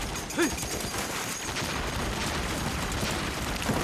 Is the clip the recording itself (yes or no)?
yes